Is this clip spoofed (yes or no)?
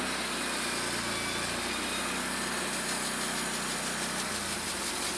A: no